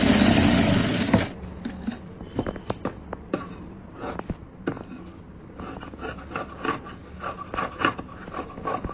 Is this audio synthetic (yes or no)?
no